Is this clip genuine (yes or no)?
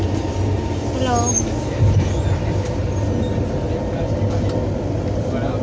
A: yes